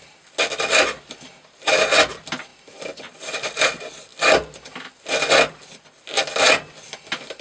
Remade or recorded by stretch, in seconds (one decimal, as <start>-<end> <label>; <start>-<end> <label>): 0.0-7.4 recorded